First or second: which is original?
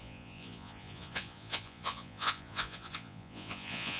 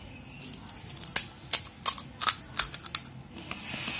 second